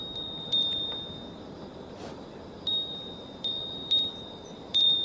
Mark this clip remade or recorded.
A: remade